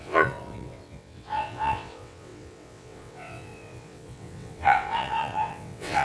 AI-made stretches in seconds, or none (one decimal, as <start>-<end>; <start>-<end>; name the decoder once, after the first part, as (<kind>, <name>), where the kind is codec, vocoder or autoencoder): 0.0-6.0 (vocoder, WaveNeXt)